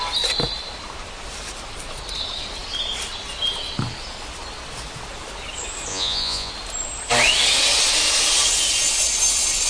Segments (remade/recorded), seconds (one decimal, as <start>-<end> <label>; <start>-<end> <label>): 0.0-5.9 recorded; 5.9-6.5 remade; 6.5-9.7 recorded